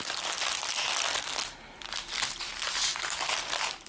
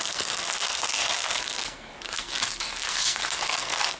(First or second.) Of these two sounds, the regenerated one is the second